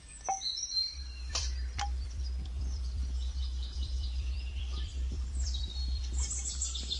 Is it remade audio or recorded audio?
remade